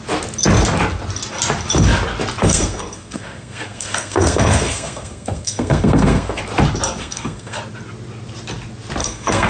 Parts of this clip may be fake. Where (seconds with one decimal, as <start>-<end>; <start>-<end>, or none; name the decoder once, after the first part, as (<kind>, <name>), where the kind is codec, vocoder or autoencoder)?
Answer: 2.4-6.4 (codec, SNAC); 7.0-7.6; 9.0-9.5